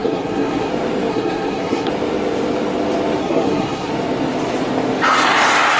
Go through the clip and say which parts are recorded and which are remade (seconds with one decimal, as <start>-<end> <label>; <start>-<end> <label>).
0.0-0.7 remade; 0.7-1.1 recorded; 1.1-1.9 remade; 1.9-3.2 recorded; 3.2-3.9 remade; 3.9-5.8 recorded